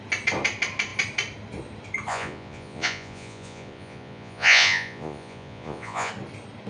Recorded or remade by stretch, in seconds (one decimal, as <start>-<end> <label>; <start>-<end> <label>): 0.0-2.1 recorded; 2.1-6.1 remade; 6.1-6.7 recorded